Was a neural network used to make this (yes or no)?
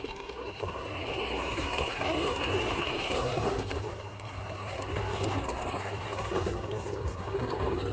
yes